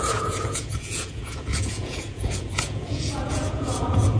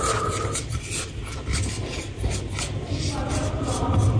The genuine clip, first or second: second